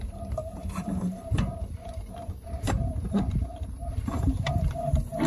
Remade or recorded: remade